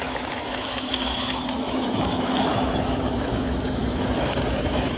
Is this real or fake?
fake